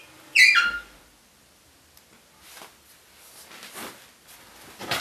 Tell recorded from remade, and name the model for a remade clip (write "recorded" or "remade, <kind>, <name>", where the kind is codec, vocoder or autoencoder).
recorded